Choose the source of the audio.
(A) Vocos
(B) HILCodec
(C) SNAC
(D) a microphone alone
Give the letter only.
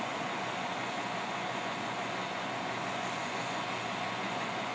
A